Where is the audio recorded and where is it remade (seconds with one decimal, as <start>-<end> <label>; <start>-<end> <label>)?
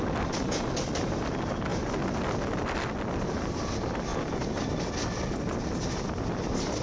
0.0-6.8 recorded